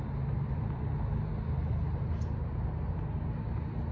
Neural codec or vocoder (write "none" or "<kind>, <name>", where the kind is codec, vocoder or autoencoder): none